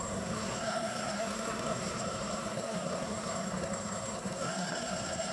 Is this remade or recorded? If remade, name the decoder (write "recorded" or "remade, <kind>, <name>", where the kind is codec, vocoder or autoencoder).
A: remade, codec, SNAC